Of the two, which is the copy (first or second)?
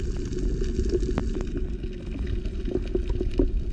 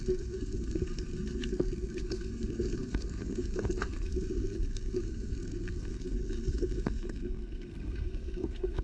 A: second